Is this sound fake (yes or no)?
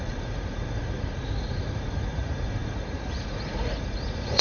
yes